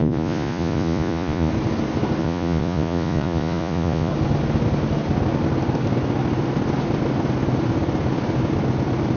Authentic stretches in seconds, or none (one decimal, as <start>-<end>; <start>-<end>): 1.5-2.2; 4.1-9.2

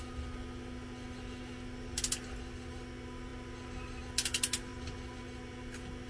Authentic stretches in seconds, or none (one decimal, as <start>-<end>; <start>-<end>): 0.0-6.1

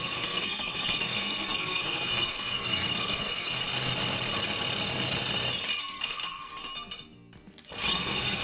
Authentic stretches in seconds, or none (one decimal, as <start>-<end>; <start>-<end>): 3.6-5.8; 6.5-7.9

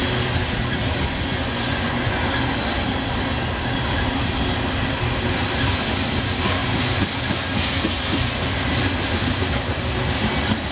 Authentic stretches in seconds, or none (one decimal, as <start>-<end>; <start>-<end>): 0.0-1.3; 2.2-10.7

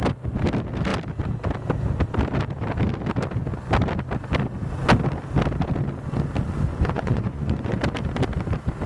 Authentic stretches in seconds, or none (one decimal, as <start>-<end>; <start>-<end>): 0.0-6.7; 7.8-8.9